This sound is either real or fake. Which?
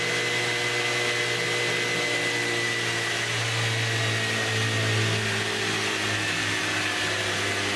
real